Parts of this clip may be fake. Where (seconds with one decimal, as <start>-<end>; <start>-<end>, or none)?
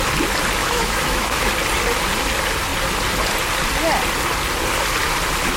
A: 0.6-1.5